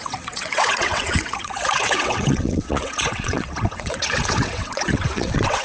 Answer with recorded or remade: remade